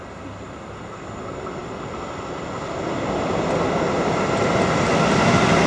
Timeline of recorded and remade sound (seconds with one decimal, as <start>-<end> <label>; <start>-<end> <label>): 0.0-5.7 recorded